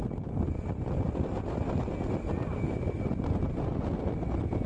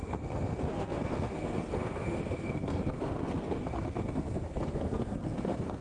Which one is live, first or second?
first